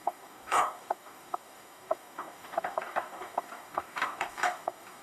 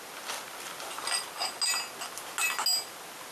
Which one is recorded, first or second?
second